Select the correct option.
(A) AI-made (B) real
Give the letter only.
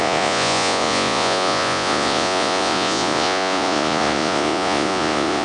A